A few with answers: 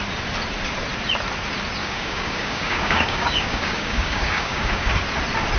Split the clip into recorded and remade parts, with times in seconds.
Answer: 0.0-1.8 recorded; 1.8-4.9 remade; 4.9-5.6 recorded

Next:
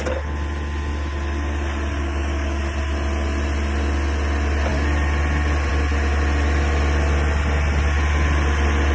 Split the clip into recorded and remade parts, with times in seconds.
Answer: 0.0-2.0 recorded; 2.0-2.6 remade; 2.6-8.9 recorded

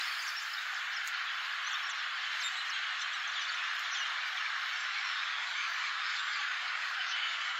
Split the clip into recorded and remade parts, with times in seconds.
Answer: 0.0-4.8 recorded; 4.8-7.6 remade

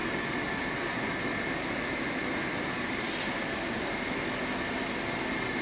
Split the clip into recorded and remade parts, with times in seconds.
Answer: 0.0-5.6 recorded